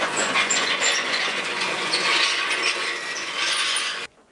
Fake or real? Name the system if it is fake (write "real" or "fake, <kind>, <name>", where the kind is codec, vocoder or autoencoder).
fake, vocoder, Vocos